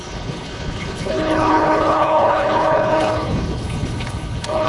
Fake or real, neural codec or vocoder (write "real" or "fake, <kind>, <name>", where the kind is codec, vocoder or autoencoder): fake, codec, HILCodec